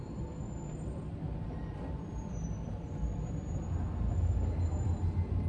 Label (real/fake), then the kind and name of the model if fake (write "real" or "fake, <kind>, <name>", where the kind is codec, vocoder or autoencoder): real